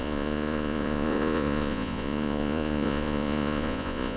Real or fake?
fake